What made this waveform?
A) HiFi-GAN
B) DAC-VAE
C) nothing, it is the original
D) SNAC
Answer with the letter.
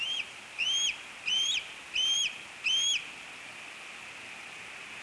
C